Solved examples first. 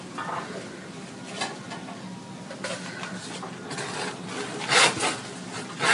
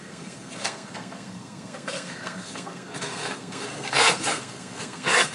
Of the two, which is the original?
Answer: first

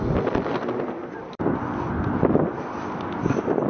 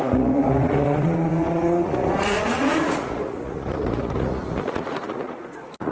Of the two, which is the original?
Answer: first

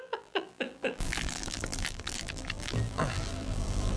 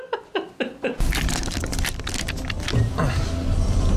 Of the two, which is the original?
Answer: second